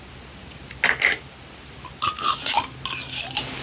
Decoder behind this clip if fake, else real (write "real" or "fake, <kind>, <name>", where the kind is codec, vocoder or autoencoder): real